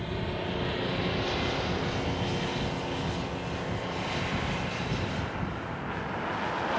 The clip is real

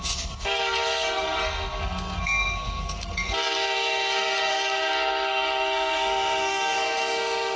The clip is fake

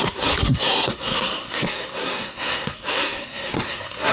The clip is fake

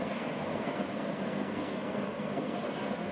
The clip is fake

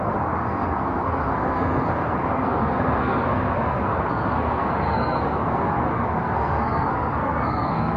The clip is fake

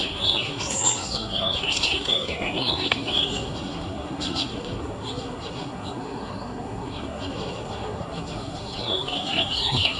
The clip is fake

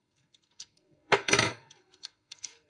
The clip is fake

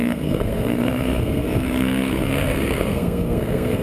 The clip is fake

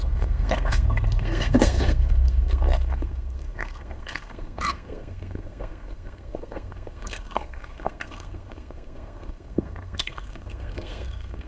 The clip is fake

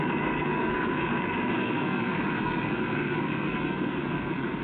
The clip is fake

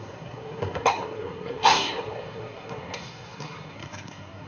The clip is fake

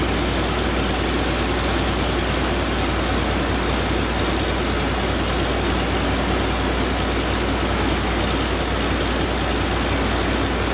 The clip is real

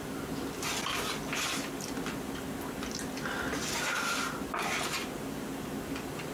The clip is real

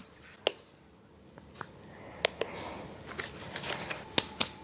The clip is real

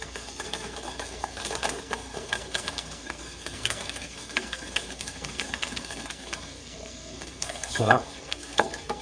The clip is fake